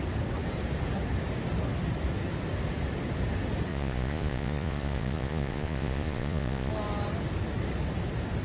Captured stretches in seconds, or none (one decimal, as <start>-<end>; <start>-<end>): 0.0-3.7; 6.7-8.4